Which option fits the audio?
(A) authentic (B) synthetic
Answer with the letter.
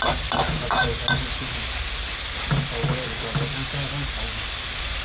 A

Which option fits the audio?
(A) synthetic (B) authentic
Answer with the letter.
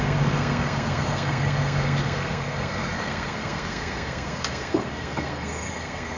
A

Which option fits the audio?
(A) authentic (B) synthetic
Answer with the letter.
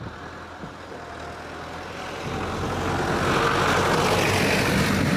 A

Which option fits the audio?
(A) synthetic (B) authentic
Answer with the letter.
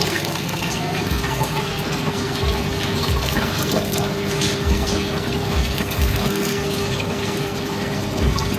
A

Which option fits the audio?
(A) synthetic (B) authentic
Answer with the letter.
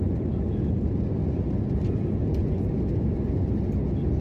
B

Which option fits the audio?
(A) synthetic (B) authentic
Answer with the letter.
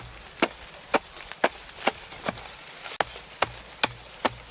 B